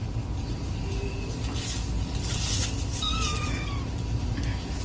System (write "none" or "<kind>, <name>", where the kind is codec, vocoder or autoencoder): none